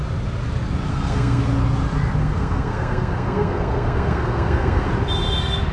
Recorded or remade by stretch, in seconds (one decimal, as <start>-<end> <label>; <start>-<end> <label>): 0.0-0.9 recorded; 0.9-1.4 remade; 1.4-2.2 recorded; 2.2-4.9 remade; 4.9-5.7 recorded